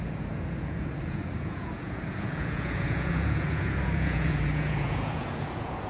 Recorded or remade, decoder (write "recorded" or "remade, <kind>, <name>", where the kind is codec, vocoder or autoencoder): remade, vocoder, Vocos